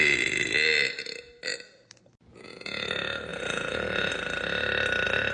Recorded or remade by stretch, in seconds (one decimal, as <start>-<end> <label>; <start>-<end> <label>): 0.0-2.3 recorded; 2.3-2.9 remade; 2.9-3.3 recorded; 3.3-4.1 remade; 4.1-5.3 recorded

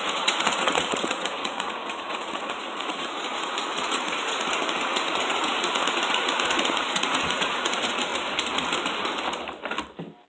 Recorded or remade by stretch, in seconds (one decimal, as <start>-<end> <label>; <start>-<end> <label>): 0.0-8.1 remade; 8.1-10.3 recorded